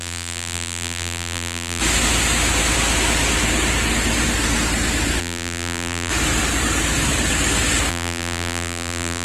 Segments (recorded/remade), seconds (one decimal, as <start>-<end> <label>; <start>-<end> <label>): 0.0-1.8 remade; 1.8-5.2 recorded; 5.2-6.1 remade; 6.1-7.9 recorded; 7.9-9.2 remade